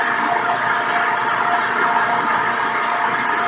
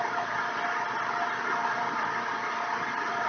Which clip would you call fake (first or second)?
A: second